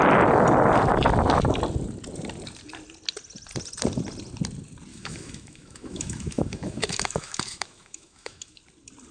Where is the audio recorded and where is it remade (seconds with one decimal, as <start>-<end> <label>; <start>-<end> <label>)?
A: 0.0-4.9 recorded; 4.9-8.6 remade; 8.6-9.1 recorded